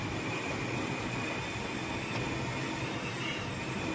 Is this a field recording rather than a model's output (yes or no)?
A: yes